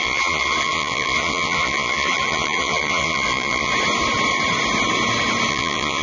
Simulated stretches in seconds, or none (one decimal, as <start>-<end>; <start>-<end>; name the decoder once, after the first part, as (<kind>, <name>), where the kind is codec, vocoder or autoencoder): 0.0-3.7 (vocoder, Vocos); 5.5-6.0